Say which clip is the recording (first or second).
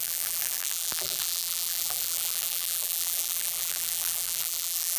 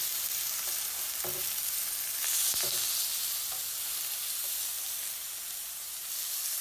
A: second